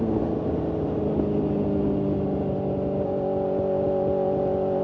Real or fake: real